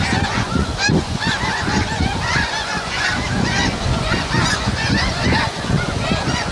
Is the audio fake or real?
fake